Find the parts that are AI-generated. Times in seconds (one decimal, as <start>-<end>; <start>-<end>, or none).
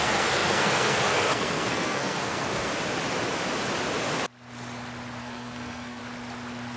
0.0-2.7; 5.2-6.0